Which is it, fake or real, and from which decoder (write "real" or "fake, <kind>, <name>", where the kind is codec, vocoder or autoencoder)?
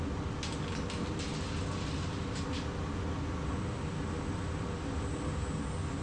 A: real